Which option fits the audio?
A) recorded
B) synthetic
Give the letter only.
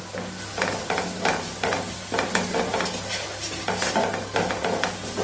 A